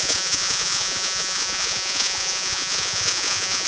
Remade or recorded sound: remade